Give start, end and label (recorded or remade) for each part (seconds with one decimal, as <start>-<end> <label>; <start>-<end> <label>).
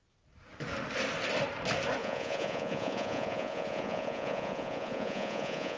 0.0-2.0 recorded; 2.0-5.8 remade